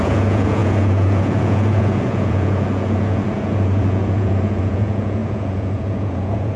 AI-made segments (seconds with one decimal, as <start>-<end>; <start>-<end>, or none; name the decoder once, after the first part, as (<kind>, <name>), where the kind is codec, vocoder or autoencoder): 0.0-6.6 (vocoder, Vocos)